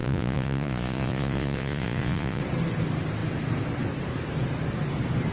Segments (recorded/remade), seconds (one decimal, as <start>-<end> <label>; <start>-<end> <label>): 0.0-2.4 remade; 2.4-5.3 recorded

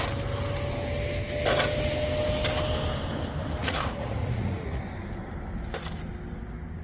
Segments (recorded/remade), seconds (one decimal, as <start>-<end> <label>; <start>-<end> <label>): 0.0-3.6 recorded; 3.6-4.8 remade; 4.8-6.8 recorded